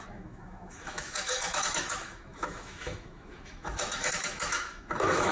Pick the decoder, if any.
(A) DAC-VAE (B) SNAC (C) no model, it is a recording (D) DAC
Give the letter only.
A